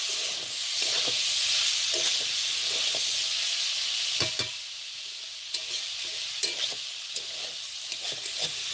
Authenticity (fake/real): real